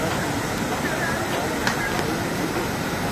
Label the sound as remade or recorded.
recorded